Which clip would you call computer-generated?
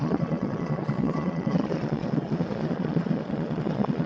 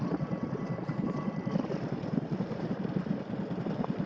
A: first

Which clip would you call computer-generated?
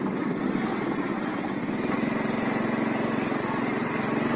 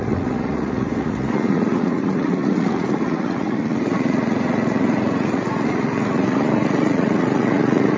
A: second